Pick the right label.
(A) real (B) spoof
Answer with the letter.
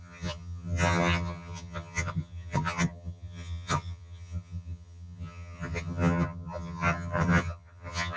B